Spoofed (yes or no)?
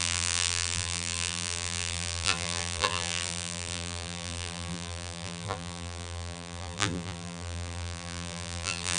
yes